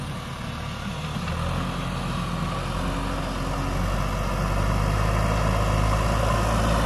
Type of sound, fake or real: real